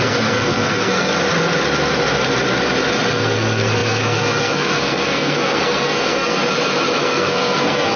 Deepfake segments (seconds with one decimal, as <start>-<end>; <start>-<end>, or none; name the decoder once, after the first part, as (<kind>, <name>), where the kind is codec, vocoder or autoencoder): 0.0-1.1 (codec, SNAC); 3.1-6.4; 7.0-8.0